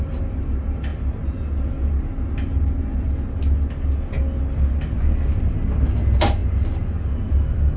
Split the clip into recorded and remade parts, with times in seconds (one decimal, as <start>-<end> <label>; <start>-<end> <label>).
0.0-7.8 recorded